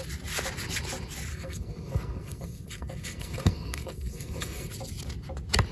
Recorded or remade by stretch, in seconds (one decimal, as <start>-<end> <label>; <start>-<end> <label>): 0.0-1.3 recorded; 1.3-4.7 remade; 4.7-5.7 recorded